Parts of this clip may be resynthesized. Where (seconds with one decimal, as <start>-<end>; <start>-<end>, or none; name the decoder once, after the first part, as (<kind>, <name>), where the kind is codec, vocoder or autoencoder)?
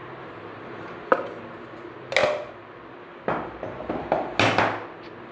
none